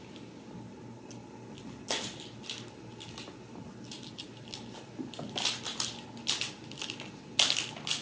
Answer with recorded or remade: recorded